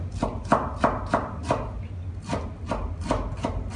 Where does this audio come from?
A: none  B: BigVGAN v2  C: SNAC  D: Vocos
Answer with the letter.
A